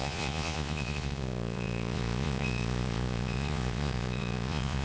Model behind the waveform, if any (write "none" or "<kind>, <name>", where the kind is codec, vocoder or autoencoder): vocoder, Vocos